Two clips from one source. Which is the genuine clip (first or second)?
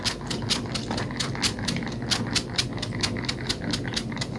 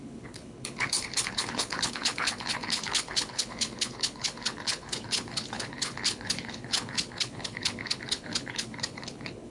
first